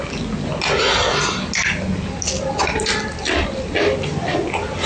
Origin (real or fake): real